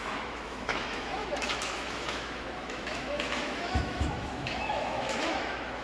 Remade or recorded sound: remade